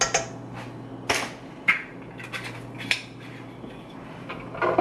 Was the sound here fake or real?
real